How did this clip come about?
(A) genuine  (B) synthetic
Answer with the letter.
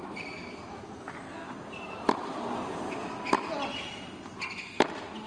A